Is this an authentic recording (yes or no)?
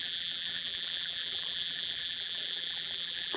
no